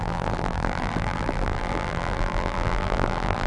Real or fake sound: fake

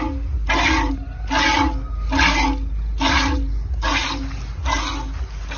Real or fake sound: real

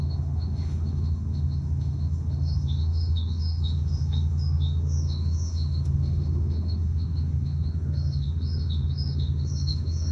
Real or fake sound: fake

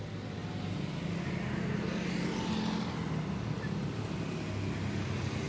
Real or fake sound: real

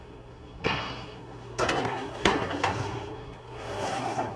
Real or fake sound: fake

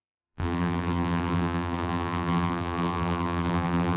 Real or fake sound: fake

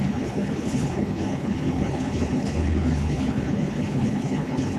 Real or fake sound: fake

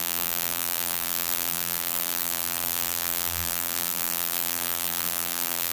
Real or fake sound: fake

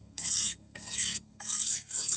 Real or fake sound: fake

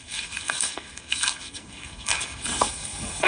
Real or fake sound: fake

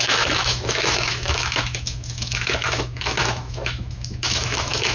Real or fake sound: fake